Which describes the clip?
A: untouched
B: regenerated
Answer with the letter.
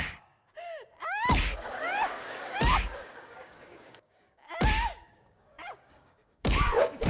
B